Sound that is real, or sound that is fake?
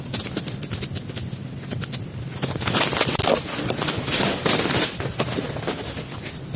real